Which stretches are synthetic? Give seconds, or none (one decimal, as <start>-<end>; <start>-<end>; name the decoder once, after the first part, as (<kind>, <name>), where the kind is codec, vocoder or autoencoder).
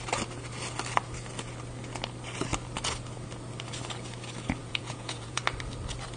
4.6-5.4 (vocoder, Vocos)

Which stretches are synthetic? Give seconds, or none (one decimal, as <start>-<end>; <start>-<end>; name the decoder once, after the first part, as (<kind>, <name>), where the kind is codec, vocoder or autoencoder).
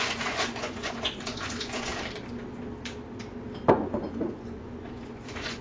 0.0-1.9 (vocoder, Vocos); 3.7-5.6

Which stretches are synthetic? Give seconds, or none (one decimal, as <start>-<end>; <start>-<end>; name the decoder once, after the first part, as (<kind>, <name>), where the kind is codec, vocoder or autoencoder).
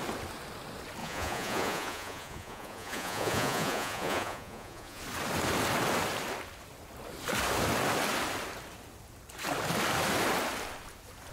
1.0-5.0 (vocoder, Vocos)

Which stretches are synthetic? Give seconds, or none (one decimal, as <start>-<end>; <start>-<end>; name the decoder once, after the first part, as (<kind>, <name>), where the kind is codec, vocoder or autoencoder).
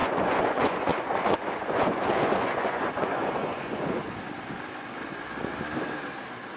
0.0-4.0 (vocoder, Vocos)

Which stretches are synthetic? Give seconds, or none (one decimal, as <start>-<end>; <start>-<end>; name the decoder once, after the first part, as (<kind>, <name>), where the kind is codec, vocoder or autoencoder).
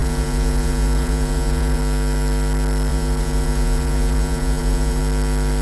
0.0-1.8 (vocoder, Vocos); 2.9-5.0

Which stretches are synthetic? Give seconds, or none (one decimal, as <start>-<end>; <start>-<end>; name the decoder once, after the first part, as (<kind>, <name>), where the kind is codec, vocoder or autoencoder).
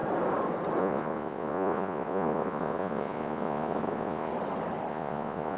0.8-4.3 (vocoder, Vocos); 4.9-5.6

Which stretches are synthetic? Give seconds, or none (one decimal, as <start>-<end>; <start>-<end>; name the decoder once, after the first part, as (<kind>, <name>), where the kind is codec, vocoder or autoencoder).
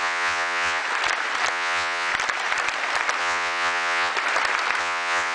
0.0-0.8 (vocoder, Vocos); 1.5-2.1; 3.2-4.1; 4.8-5.3